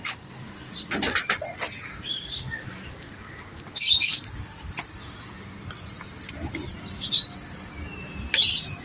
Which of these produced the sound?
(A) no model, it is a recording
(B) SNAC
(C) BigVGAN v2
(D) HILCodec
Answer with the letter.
A